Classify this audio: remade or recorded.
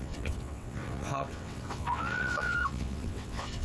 remade